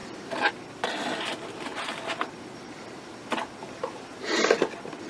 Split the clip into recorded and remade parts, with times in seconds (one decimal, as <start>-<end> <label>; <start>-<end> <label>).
0.0-0.5 remade; 0.5-3.6 recorded; 3.6-4.4 remade; 4.4-5.1 recorded